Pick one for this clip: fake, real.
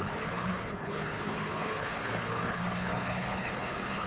fake